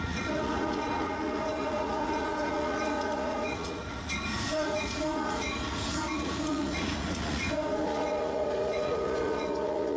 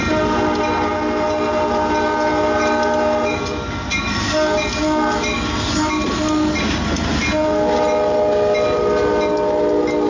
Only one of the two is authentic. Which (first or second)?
second